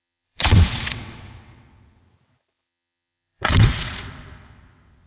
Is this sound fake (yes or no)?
yes